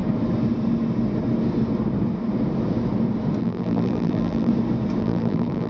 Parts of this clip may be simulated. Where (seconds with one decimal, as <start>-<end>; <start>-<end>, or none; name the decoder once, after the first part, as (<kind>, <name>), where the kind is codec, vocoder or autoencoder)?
3.4-4.5 (vocoder, BigVGAN v2); 5.0-5.7